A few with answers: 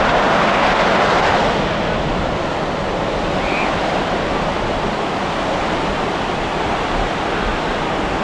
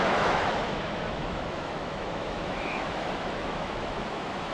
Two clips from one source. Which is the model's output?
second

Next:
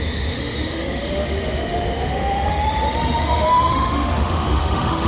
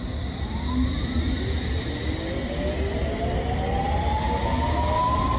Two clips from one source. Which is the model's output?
first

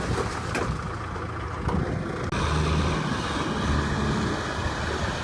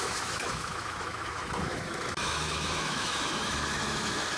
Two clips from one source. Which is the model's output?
second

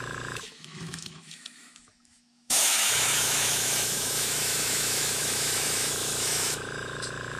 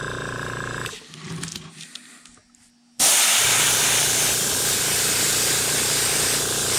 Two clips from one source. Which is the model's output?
first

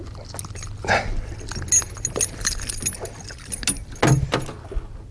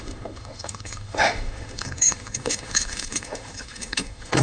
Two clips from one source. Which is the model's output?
second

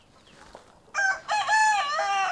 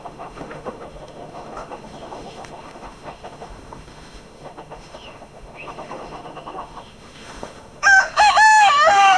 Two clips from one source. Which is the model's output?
second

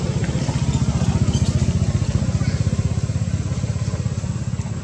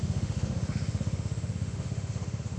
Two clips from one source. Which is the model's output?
second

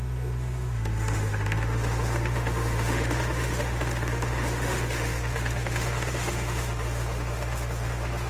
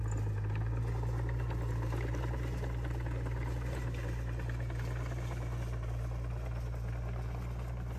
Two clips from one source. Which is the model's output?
first